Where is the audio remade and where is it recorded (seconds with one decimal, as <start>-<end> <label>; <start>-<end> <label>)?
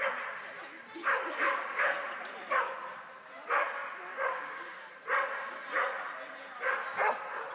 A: 0.0-1.0 recorded; 1.0-1.8 remade; 1.8-4.1 recorded; 4.1-4.9 remade; 4.9-7.5 recorded